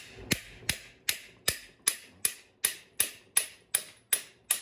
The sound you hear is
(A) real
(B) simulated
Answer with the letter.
A